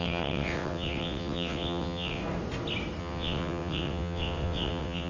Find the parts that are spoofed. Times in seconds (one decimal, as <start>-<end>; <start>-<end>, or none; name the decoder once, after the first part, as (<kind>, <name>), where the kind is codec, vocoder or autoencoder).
0.0-2.2 (vocoder, WaveNeXt); 3.0-5.1